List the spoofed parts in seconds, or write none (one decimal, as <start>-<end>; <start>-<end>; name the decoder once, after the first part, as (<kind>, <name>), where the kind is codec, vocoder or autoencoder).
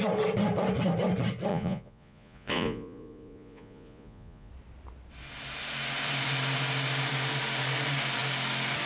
1.5-4.5 (vocoder, Vocos)